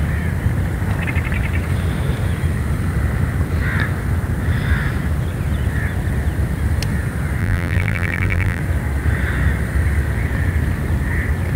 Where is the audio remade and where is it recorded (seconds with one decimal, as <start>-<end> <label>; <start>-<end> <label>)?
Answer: 0.0-7.4 recorded; 7.4-8.6 remade; 8.6-11.6 recorded